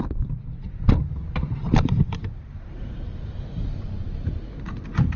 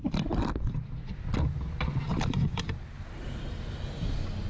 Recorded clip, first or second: second